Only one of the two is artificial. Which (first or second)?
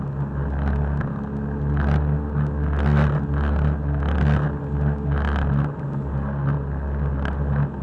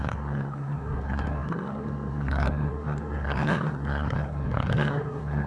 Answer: second